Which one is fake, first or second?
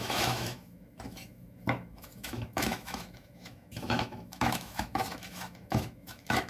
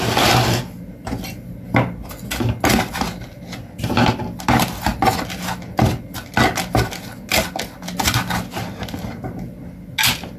first